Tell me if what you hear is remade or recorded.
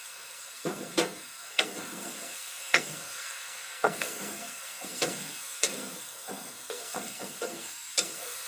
remade